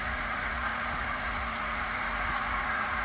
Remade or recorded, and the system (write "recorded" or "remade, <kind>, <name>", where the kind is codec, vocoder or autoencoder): remade, vocoder, Vocos